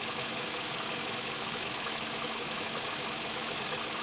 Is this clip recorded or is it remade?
remade